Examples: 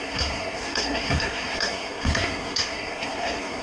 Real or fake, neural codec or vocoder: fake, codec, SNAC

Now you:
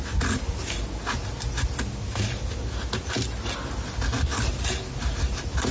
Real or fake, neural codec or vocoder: real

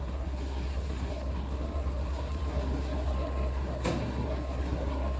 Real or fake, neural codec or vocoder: fake, codec, SNAC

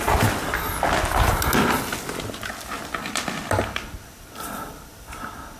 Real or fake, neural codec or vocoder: real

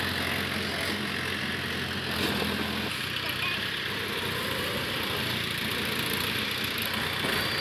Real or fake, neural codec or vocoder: real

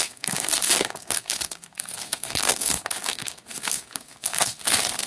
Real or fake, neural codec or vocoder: fake, codec, SNAC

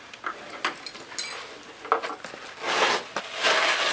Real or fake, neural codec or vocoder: real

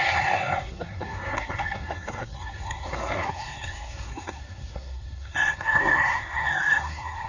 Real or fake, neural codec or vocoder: fake, codec, SNAC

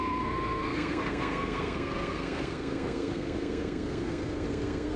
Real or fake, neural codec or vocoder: fake, codec, SNAC